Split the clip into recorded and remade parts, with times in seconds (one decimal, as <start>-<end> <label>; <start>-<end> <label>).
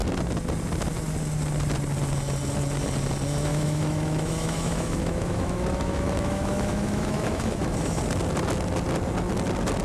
0.0-3.5 recorded; 3.5-8.0 remade; 8.0-9.8 recorded